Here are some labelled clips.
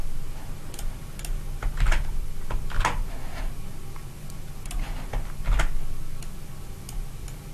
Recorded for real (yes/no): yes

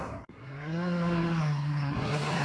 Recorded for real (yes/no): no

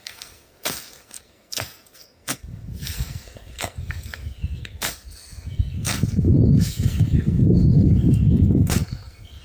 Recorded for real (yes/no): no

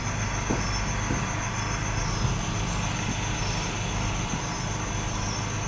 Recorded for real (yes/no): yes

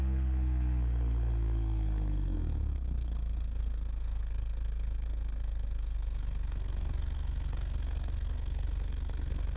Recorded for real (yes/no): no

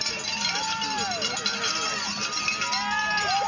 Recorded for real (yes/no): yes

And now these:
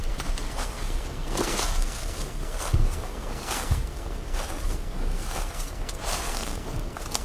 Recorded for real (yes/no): no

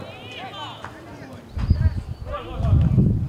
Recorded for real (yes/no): yes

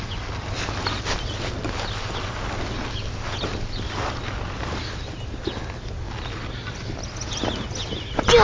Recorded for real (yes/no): yes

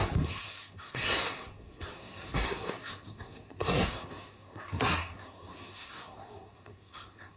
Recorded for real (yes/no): no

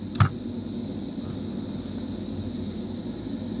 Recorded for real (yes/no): yes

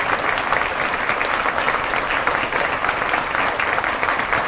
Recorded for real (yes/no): yes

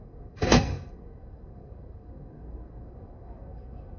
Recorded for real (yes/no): no